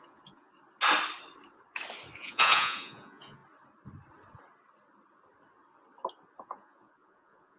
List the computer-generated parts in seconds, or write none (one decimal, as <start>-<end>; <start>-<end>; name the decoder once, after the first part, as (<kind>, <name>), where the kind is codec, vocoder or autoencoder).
0.0-0.5 (vocoder, Vocos); 2.2-3.4; 6.4-7.6